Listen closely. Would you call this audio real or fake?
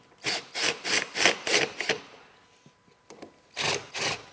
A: real